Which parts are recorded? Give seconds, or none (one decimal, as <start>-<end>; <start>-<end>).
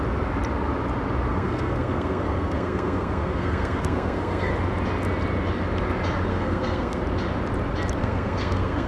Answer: 0.0-1.3; 4.5-6.3; 7.0-8.0